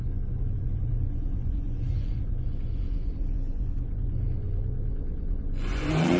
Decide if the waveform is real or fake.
fake